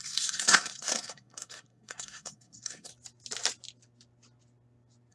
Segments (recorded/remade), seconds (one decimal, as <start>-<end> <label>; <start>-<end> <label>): 0.0-2.9 remade; 2.9-5.1 recorded